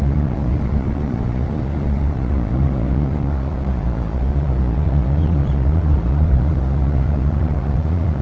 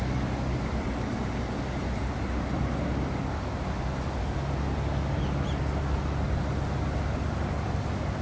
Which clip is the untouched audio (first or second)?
second